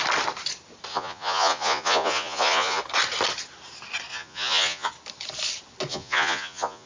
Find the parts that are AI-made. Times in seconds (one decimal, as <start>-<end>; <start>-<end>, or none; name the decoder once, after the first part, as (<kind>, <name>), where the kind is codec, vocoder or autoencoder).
0.9-2.8 (vocoder, Vocos); 4.1-4.9; 5.9-6.9